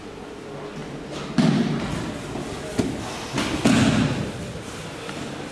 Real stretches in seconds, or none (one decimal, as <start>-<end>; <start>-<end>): 0.0-5.5